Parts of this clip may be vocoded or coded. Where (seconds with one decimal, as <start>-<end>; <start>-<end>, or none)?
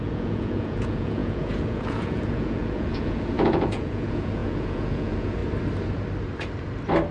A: 0.0-5.4